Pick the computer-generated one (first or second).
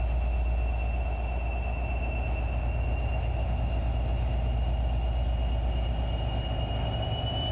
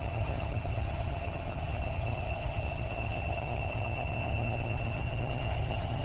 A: second